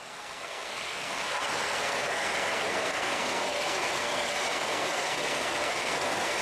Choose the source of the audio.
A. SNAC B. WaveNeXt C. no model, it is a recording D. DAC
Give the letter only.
A